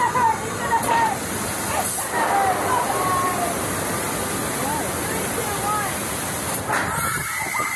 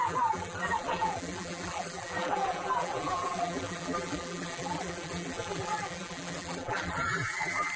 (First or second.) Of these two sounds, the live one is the first